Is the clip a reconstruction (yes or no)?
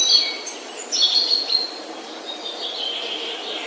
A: no